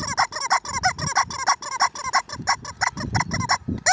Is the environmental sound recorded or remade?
recorded